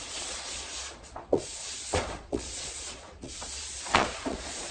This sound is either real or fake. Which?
fake